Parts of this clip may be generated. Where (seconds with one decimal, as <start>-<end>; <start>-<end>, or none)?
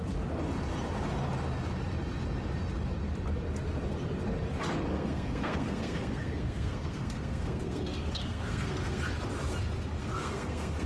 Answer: 4.9-9.0; 10.0-10.9